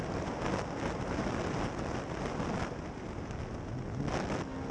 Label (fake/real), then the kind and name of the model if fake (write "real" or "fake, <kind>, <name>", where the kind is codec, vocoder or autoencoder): real